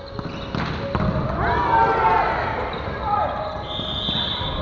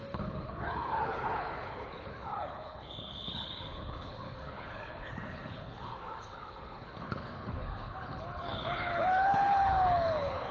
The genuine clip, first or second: first